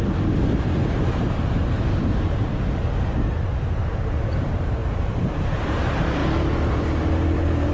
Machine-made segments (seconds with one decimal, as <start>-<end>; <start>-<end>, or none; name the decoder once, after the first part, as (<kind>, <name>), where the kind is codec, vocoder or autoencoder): 0.0-6.2 (vocoder, BigVGAN v2); 6.8-7.7